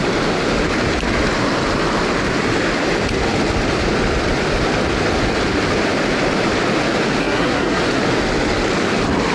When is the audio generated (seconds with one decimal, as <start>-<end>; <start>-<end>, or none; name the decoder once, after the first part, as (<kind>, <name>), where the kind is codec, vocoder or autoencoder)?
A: 7.2-7.8 (codec, SNAC)